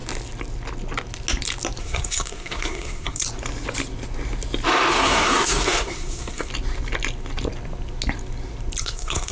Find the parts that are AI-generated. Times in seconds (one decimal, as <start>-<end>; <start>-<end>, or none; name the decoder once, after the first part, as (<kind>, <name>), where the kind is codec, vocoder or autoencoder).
1.8-3.2 (codec, SNAC); 4.9-6.5; 8.8-9.3